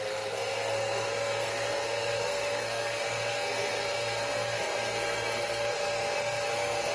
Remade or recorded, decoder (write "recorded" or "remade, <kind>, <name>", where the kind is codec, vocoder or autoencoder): remade, codec, SNAC